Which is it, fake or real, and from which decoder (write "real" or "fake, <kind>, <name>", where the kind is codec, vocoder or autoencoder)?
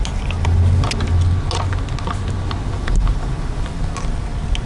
real